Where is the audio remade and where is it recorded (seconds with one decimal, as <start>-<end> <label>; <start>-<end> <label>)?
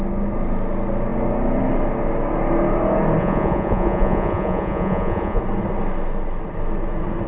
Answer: 0.0-3.2 recorded; 3.2-5.4 remade; 5.4-7.3 recorded